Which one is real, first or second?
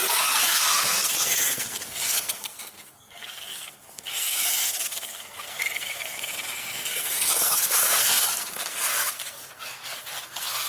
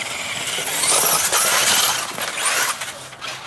second